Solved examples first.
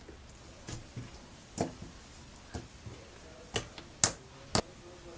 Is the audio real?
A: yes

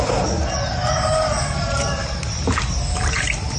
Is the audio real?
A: yes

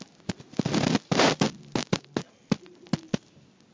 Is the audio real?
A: yes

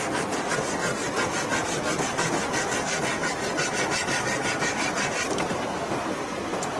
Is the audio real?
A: yes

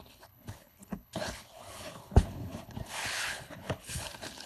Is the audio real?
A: no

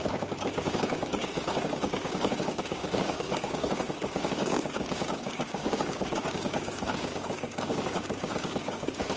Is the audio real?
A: no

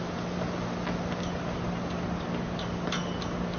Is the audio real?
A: yes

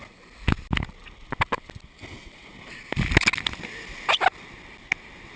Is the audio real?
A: yes